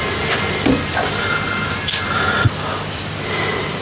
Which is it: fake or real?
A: real